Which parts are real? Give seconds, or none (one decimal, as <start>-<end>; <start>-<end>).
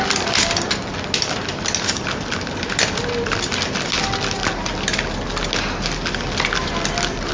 0.0-7.3